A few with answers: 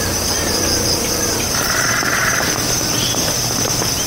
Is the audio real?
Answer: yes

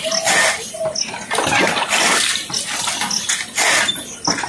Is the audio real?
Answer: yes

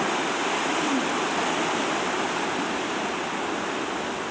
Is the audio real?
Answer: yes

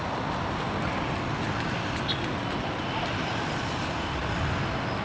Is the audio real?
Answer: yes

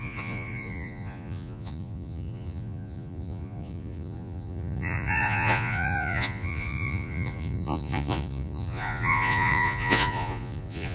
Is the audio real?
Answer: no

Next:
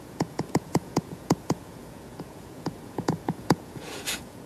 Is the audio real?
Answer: no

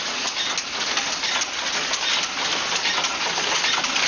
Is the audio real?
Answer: yes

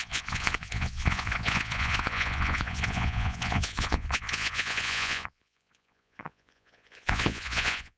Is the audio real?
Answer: no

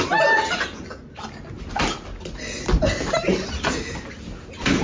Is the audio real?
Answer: yes